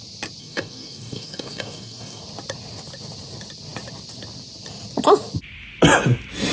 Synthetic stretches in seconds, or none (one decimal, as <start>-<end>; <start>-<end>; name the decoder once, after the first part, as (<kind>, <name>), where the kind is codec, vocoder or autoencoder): 0.4-2.2 (codec, DAC)